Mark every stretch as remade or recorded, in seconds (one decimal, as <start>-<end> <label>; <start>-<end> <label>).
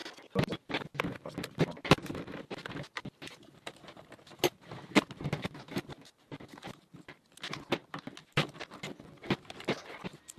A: 0.0-10.4 recorded